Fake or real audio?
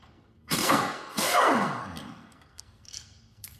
fake